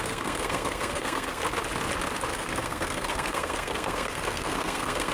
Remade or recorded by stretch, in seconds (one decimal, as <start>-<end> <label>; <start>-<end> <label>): 0.0-1.4 remade; 1.4-2.3 recorded; 2.3-5.1 remade